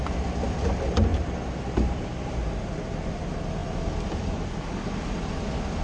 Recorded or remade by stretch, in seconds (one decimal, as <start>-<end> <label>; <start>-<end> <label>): 0.0-1.1 recorded; 1.1-2.3 remade; 2.3-3.6 recorded; 3.6-4.8 remade; 4.8-5.8 recorded